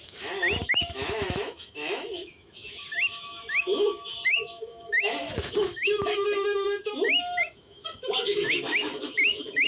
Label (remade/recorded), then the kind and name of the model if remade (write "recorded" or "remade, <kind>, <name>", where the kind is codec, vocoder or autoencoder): remade, autoencoder, DAC-VAE